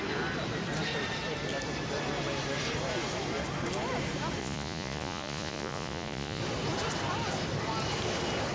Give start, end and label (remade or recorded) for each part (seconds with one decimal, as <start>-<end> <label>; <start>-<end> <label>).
0.0-4.4 recorded; 4.4-6.4 remade; 6.4-8.5 recorded